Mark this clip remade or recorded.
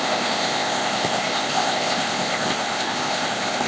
remade